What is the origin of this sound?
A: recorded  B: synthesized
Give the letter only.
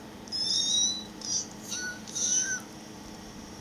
B